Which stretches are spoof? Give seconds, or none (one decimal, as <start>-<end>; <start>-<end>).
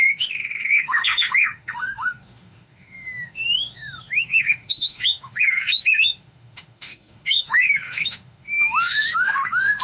0.0-9.8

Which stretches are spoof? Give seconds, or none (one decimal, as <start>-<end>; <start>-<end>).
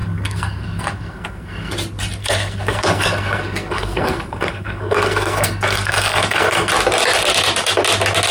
0.0-1.7; 2.2-6.7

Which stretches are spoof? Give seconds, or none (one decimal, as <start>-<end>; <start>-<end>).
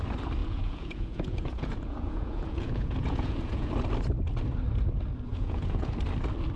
0.4-3.7; 5.3-5.9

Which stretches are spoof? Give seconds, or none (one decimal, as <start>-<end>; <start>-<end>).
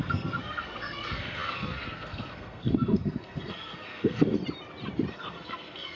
0.0-4.4; 5.1-5.9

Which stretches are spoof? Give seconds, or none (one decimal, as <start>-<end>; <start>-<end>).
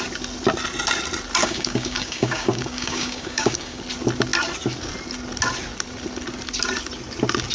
1.4-3.8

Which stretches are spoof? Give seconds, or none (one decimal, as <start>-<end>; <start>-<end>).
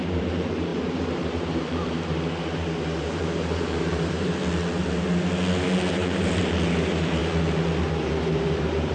0.0-4.4; 5.9-7.2; 7.9-8.9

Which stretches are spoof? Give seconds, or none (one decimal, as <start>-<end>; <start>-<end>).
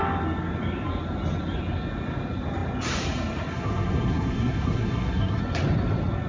3.5-5.4